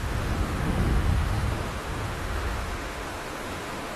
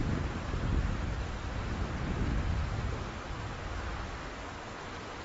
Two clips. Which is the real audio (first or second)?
second